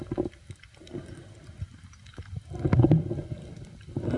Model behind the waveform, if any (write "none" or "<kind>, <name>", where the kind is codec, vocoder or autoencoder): none